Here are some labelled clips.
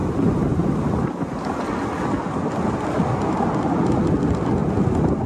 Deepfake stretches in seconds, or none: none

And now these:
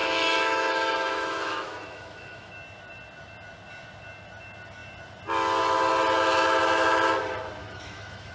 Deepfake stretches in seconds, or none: 0.0-2.5 (autoencoder, DAC-VAE); 7.6-8.3

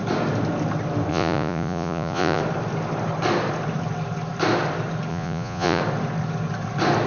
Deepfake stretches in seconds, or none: 1.1-2.4 (vocoder, Vocos); 5.1-5.8